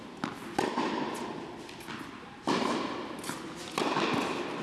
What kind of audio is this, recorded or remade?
recorded